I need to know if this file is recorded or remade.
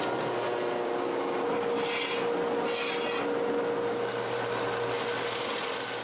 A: recorded